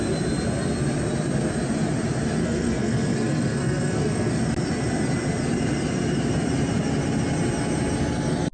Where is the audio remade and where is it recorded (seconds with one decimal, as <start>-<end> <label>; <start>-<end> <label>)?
0.0-2.4 recorded; 2.4-4.3 remade; 4.3-8.5 recorded